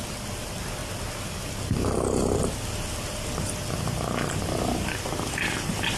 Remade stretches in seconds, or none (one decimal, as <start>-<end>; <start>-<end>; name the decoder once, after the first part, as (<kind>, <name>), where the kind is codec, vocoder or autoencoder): none